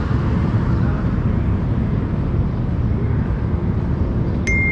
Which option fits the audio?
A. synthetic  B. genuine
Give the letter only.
B